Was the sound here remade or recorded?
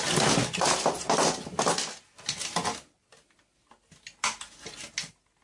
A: recorded